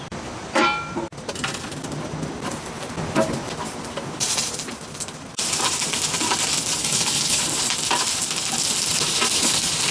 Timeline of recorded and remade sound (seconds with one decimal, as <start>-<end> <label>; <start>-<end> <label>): 0.0-6.8 recorded; 6.8-7.4 remade; 7.4-9.9 recorded